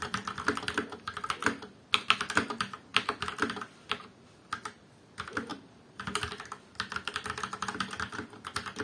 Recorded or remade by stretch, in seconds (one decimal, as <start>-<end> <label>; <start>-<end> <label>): 0.0-5.5 recorded; 5.5-6.0 remade; 6.0-8.8 recorded